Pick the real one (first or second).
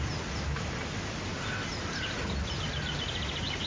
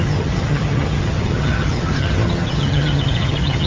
first